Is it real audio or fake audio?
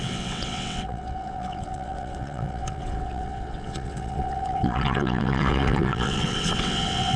fake